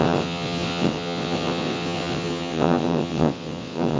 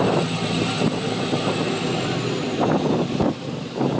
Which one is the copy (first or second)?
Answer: first